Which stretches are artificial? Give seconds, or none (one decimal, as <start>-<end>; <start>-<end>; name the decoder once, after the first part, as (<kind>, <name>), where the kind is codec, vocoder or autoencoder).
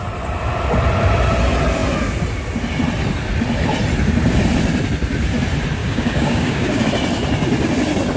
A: 5.8-6.8 (codec, DAC)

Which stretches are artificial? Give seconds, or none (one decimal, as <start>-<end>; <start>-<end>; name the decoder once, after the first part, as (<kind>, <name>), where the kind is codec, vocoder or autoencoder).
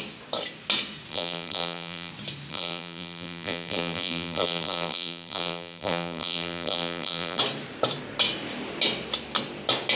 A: 1.1-2.1 (vocoder, BigVGAN v2); 2.5-7.4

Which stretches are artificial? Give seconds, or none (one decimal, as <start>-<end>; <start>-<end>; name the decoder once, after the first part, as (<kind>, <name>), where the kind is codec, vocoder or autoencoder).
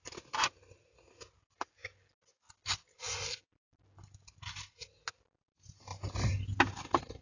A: none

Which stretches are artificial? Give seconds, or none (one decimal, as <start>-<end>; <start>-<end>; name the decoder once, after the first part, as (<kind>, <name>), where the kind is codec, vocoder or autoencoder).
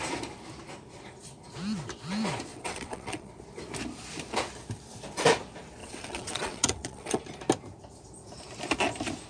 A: 2.5-3.3 (vocoder, WaveNeXt); 5.8-7.2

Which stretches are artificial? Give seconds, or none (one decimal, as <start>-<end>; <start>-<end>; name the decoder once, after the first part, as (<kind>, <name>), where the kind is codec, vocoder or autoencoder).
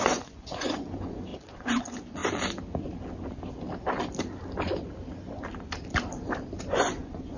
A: 0.0-2.2 (vocoder, Vocos); 6.6-7.4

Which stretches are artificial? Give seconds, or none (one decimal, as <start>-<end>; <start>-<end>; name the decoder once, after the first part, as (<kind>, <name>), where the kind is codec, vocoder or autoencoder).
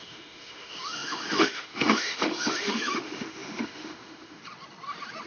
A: 0.0-4.4 (autoencoder, DAC-VAE)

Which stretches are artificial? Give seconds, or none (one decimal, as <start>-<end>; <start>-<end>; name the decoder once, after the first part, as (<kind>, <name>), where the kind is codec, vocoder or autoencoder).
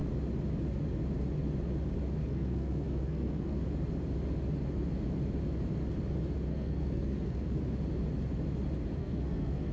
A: 2.2-3.6 (codec, SNAC); 6.5-7.6; 9.0-9.7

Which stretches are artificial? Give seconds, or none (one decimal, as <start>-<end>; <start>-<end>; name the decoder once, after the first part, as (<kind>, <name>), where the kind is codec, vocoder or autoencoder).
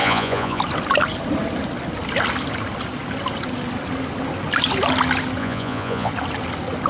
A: 0.0-0.6 (vocoder, Vocos); 5.4-6.1